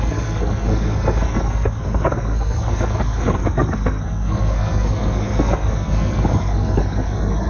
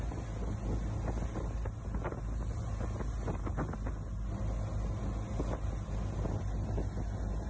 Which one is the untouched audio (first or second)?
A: second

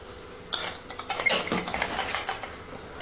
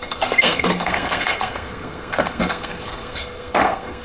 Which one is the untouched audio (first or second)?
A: first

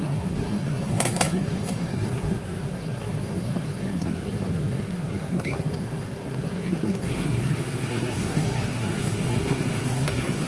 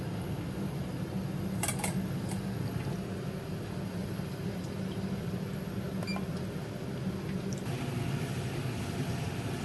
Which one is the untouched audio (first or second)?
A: second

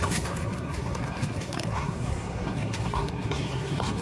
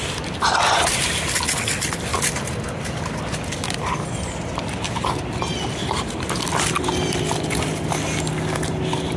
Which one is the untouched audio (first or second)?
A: second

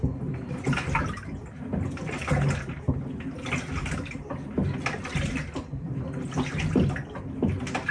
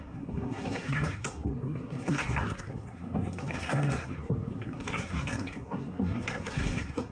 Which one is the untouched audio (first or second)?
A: first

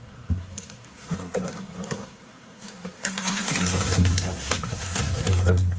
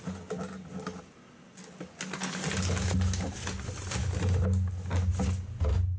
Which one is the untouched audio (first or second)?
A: second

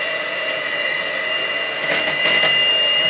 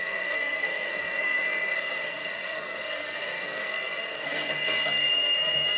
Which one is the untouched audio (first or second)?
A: first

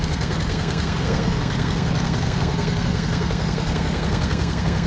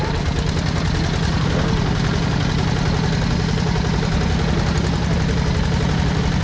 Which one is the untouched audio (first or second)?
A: second